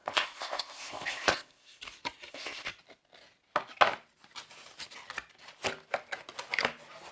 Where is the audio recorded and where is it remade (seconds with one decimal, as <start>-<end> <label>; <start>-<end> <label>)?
0.0-1.8 remade; 1.8-2.3 recorded; 2.3-2.7 remade; 2.7-7.1 recorded